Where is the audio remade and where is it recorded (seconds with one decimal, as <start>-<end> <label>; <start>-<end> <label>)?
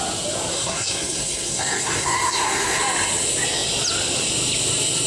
0.0-0.5 recorded; 0.5-2.8 remade; 2.8-5.1 recorded